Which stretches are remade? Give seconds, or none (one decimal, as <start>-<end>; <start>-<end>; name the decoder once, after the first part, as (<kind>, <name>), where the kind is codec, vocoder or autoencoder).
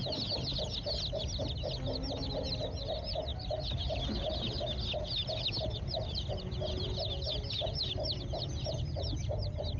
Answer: none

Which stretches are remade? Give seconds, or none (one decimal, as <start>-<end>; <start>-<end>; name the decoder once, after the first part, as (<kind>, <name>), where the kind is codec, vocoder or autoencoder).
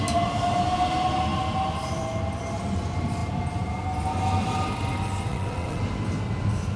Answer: 5.3-5.8 (vocoder, WaveNeXt)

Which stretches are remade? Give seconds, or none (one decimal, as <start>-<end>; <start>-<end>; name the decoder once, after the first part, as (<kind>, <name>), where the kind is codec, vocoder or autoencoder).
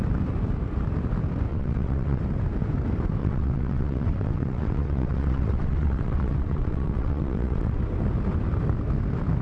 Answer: 1.5-2.2 (vocoder, WaveNeXt); 3.2-7.8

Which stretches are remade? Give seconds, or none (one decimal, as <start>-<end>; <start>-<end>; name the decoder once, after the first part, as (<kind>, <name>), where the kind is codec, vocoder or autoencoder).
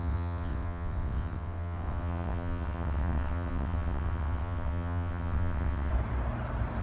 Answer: 0.0-5.9 (vocoder, WaveNeXt)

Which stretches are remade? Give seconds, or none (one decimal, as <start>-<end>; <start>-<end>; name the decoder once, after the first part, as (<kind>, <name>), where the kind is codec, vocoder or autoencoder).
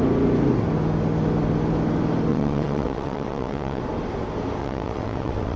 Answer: 2.3-3.8 (vocoder, WaveNeXt); 4.6-5.6